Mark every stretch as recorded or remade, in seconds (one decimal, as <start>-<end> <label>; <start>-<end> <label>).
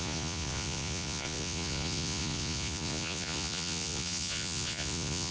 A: 0.0-5.3 remade